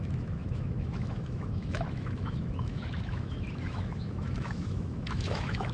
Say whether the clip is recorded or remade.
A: remade